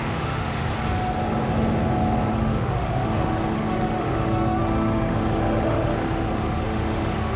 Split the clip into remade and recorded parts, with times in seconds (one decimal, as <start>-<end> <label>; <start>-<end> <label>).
0.0-0.7 remade; 0.7-2.3 recorded; 2.3-7.4 remade

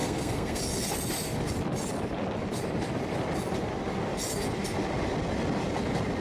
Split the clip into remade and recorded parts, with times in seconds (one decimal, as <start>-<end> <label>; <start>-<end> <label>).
0.0-0.6 remade; 0.6-6.2 recorded